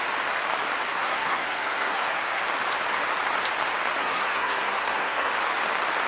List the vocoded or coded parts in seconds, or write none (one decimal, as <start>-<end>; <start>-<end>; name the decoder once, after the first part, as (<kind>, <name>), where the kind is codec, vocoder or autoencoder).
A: 0.9-2.4 (codec, SNAC); 4.0-5.3